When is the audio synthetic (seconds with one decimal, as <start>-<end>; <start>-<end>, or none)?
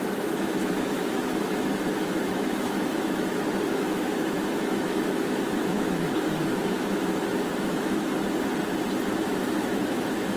0.0-8.1; 9.2-10.4